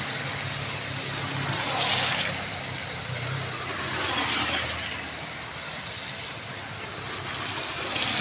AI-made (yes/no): no